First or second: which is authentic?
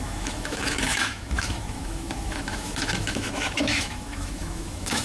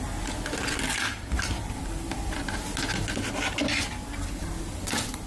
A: second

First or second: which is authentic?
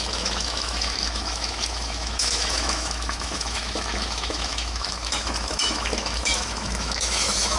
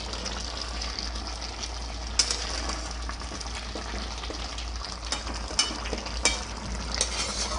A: second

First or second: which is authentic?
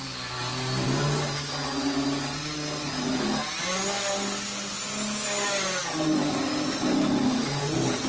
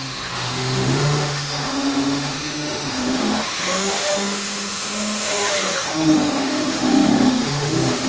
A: first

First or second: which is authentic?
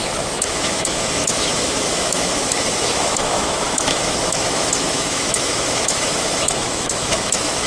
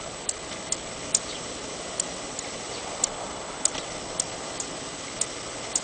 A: second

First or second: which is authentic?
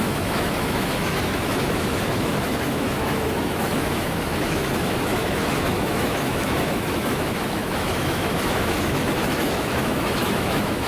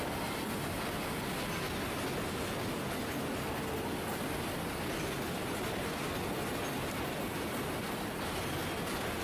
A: second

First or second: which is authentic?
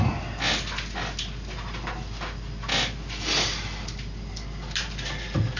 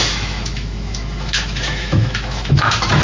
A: first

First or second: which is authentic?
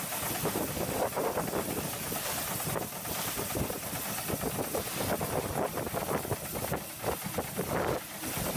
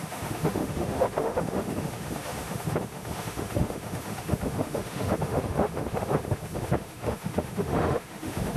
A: first